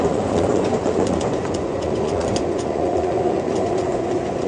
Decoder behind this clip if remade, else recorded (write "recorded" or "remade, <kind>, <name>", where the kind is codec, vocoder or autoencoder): remade, vocoder, Vocos